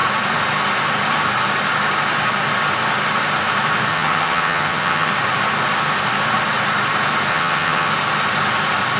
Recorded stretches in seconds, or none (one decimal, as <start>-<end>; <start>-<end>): 0.0-3.9; 5.1-7.3; 7.9-9.0